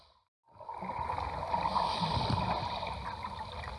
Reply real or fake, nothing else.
real